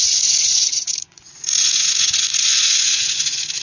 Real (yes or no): no